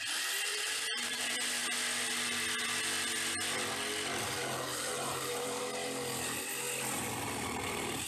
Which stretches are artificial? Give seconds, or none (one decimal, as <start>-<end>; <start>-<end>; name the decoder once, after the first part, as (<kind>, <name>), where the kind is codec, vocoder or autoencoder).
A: 0.5-1.2 (vocoder, BigVGAN v2); 4.7-5.6